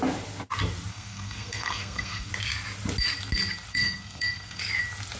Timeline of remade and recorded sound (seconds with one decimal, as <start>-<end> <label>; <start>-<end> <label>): 0.0-0.9 recorded; 0.9-2.3 remade; 2.3-3.7 recorded; 3.7-4.6 remade; 4.6-5.2 recorded